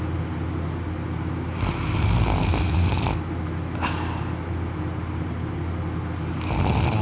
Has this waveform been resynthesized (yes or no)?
no